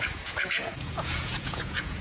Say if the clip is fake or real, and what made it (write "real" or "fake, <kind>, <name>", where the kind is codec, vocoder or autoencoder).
fake, vocoder, Vocos